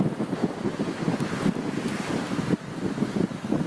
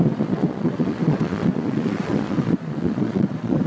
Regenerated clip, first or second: second